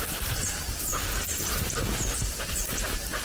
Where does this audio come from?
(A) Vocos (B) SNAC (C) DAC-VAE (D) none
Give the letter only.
D